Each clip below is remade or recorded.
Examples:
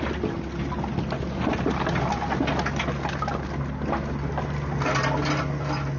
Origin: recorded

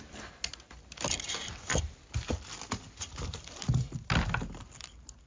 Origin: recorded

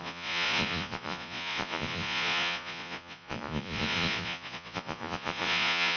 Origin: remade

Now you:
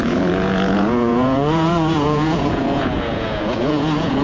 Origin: remade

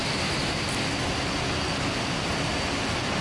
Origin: recorded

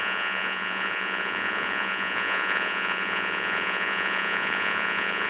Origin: remade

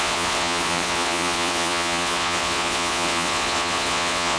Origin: remade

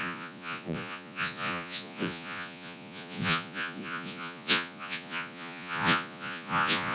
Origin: remade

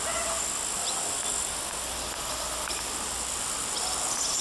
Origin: recorded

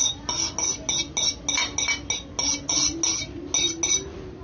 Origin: recorded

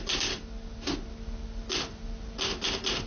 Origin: recorded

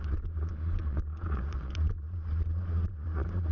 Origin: remade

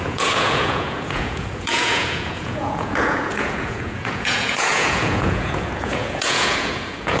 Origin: remade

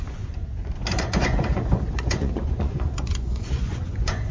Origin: remade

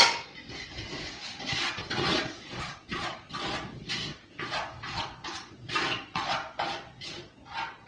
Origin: remade